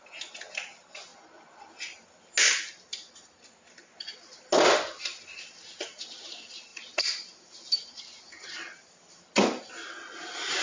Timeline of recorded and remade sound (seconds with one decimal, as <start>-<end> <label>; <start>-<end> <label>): 0.0-10.6 recorded